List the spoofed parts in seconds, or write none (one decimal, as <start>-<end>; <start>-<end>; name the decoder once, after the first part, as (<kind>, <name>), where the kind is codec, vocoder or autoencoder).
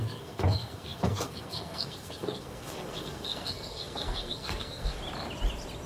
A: 0.0-5.0 (codec, SNAC)